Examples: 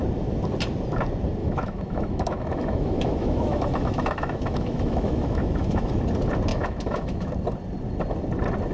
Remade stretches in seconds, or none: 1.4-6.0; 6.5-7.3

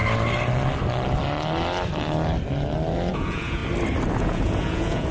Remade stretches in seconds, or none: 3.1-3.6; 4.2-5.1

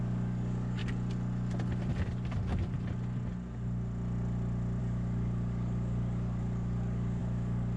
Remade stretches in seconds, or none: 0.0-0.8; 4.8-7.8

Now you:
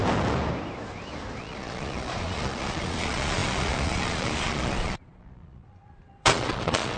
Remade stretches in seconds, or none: 1.4-7.0

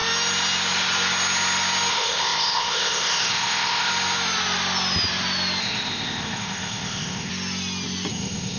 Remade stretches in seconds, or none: 1.9-3.9; 5.6-7.3; 8.1-8.6

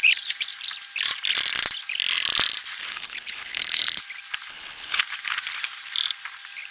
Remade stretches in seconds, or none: 2.8-4.0; 4.5-5.0